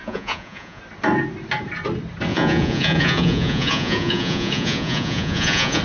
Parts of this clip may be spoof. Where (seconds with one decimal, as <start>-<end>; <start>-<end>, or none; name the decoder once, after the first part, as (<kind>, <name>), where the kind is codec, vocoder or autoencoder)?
0.0-0.8 (vocoder, Vocos); 2.3-5.8